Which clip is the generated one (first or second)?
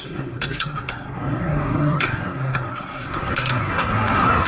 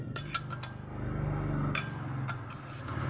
first